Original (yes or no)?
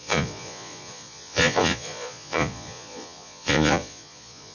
no